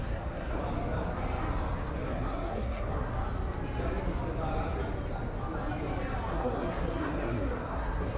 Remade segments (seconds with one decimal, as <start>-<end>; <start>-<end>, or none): 0.0-0.6; 2.1-3.1; 6.3-8.2